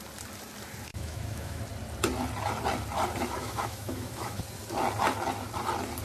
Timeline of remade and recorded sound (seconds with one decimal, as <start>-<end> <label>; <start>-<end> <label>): 0.0-0.9 recorded; 0.9-1.6 remade; 1.6-3.4 recorded; 3.4-4.4 remade; 4.4-6.0 recorded